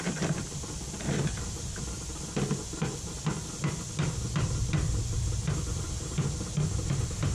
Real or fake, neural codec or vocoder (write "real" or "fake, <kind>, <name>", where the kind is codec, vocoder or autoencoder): real